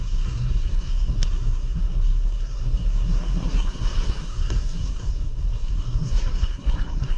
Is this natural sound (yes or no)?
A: no